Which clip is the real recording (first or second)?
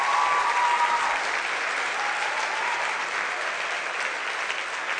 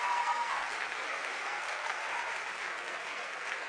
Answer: first